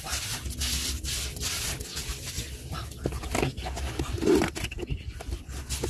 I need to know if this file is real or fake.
real